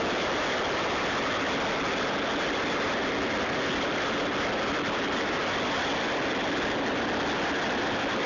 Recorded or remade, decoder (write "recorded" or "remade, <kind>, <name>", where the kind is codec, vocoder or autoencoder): recorded